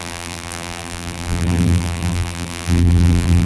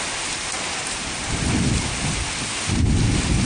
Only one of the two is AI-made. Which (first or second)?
first